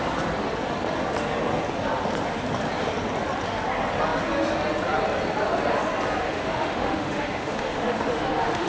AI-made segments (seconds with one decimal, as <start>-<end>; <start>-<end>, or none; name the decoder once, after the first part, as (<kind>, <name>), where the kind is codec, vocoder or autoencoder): 6.2-8.7 (autoencoder, DAC-VAE)